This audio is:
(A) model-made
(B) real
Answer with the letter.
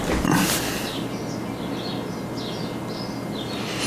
B